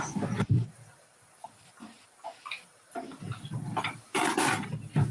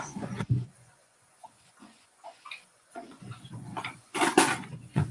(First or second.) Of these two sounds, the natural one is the first